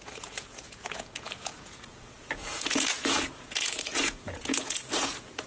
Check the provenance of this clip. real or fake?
fake